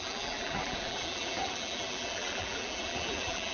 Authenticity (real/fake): fake